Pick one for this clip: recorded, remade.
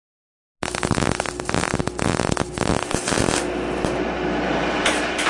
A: recorded